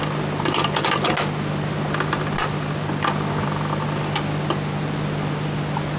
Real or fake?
real